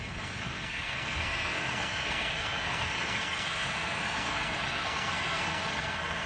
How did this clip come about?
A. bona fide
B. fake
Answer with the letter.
B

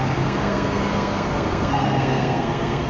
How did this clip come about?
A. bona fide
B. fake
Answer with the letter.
B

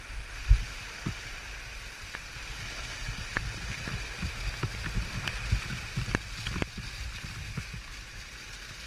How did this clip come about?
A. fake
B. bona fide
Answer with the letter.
B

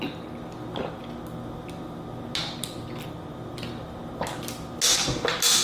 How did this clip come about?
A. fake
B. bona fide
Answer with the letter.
B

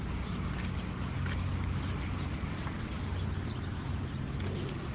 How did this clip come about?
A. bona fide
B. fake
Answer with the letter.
A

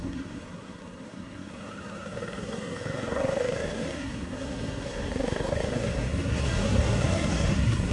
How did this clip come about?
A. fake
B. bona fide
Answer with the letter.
A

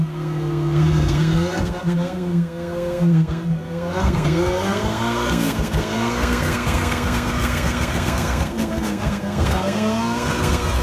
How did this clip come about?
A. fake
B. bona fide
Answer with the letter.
A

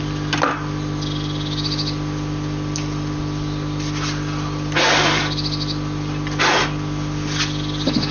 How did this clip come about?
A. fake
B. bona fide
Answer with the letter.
B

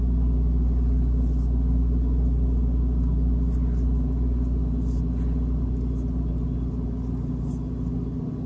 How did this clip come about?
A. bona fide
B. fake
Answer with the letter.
A